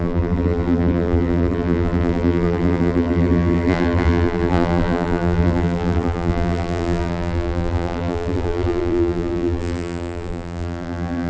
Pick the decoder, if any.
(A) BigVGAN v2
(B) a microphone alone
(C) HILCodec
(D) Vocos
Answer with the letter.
A